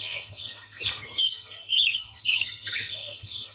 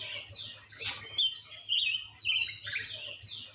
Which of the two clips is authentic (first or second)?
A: second